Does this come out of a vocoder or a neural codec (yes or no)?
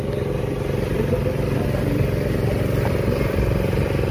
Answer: no